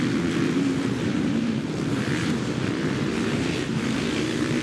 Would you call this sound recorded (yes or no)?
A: no